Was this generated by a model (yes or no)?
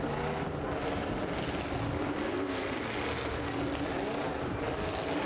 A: no